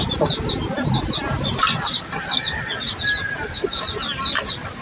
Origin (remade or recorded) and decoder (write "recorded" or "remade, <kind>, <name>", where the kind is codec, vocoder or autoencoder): recorded